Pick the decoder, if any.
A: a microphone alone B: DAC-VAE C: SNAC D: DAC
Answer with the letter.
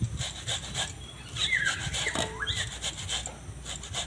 A